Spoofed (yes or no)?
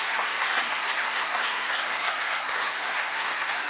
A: yes